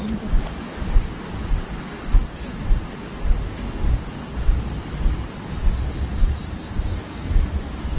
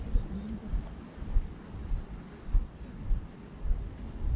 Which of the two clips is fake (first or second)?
second